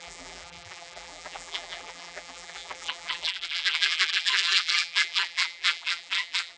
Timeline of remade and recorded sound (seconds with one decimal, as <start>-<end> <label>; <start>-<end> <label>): 0.0-6.6 remade